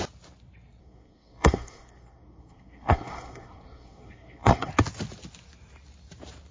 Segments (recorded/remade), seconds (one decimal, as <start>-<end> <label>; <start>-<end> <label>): 0.0-0.8 recorded; 0.8-4.7 remade; 4.7-6.5 recorded